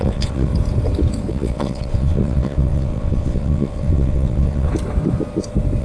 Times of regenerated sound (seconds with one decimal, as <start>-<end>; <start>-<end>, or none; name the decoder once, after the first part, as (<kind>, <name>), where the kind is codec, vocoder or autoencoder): 0.0-0.5 (vocoder, WaveNeXt); 1.3-4.7